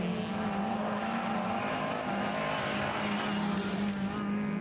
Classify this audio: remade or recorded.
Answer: recorded